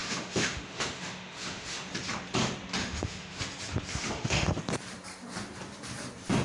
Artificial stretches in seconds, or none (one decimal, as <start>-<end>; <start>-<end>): 0.0-1.9; 2.8-3.4; 3.9-4.6